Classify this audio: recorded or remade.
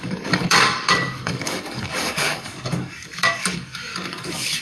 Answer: remade